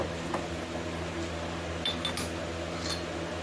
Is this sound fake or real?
real